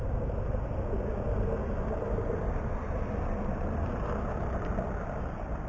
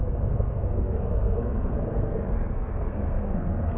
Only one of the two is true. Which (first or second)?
first